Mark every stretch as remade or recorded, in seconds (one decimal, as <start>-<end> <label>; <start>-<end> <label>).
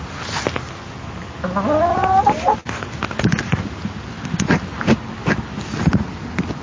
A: 0.0-6.6 recorded